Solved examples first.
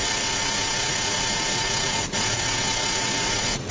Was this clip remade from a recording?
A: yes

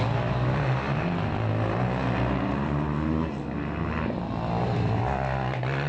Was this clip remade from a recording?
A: no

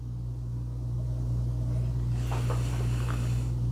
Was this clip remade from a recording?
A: no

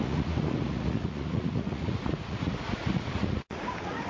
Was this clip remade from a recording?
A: yes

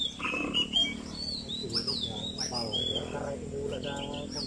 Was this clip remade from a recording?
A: no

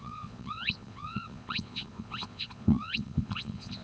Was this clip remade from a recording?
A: yes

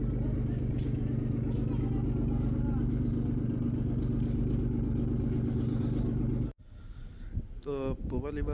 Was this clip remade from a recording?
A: no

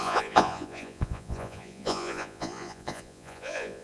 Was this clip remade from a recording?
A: yes